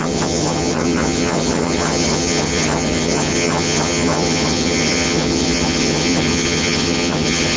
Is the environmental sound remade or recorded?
remade